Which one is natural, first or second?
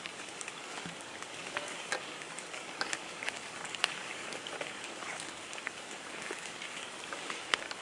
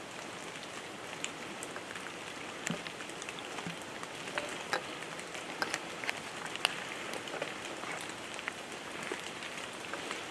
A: second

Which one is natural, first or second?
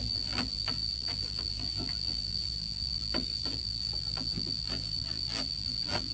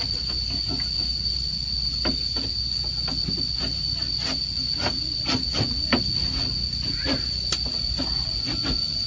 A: second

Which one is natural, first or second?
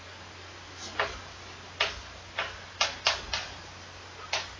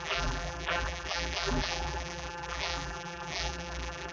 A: first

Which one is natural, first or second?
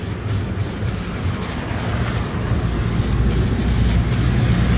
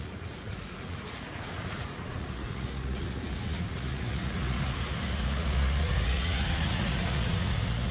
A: first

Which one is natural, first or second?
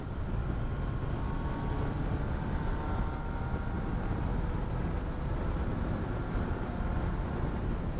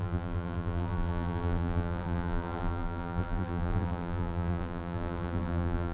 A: first